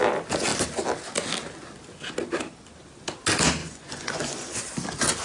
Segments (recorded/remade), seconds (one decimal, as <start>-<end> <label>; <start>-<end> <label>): 0.0-3.6 recorded; 3.6-4.6 remade; 4.6-5.2 recorded